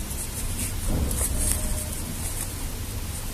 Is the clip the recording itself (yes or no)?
yes